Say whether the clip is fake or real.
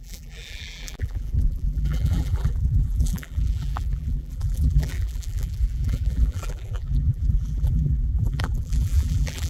fake